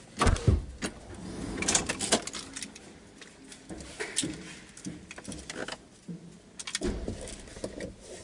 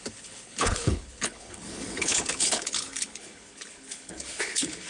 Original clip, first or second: first